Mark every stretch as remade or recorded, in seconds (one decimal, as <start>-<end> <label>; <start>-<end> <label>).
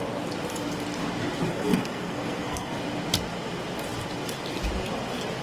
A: 0.0-1.5 recorded; 1.5-2.8 remade; 2.8-5.4 recorded